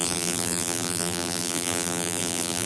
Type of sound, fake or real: fake